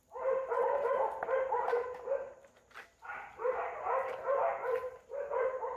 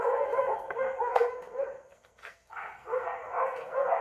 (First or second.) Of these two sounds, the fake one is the second